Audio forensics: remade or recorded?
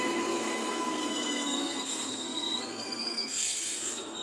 remade